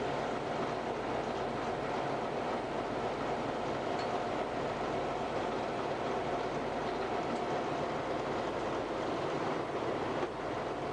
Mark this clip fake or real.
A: real